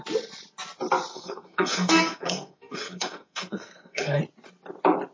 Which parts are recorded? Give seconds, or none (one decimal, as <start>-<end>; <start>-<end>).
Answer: 0.0-1.1; 4.2-5.1